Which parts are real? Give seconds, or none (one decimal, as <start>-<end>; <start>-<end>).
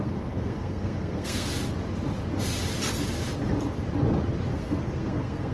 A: 1.5-4.5